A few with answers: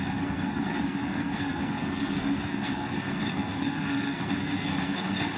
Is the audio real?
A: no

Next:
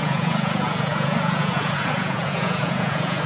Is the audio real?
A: no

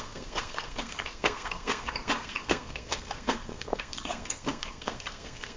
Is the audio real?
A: no